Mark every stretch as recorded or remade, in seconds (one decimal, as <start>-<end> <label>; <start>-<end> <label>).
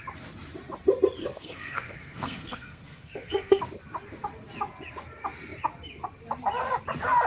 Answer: 0.0-1.2 recorded; 1.2-3.6 remade; 3.6-7.3 recorded